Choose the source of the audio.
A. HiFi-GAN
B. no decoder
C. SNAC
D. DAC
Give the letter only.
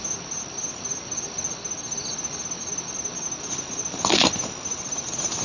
B